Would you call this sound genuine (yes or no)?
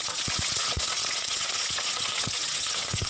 no